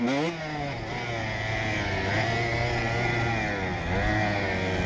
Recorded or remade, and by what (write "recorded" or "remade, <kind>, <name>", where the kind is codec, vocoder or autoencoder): recorded